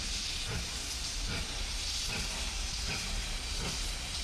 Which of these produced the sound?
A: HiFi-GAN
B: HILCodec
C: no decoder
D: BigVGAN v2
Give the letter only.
C